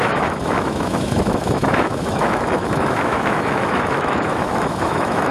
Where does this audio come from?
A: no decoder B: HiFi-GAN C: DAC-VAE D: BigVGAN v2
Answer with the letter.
C